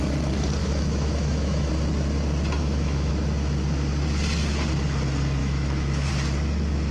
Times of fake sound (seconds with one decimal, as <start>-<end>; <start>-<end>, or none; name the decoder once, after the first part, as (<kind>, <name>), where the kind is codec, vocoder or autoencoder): 0.6-1.7 (autoencoder, DAC-VAE); 2.6-3.1; 5.4-6.1